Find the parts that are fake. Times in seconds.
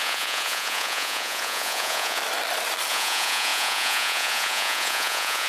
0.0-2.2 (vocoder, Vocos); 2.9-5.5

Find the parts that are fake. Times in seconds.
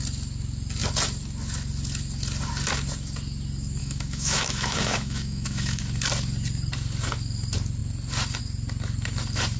3.8-5.8 (autoencoder, DAC-VAE)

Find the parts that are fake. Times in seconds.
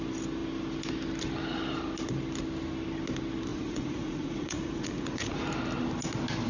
3.5-5.4 (vocoder, Vocos)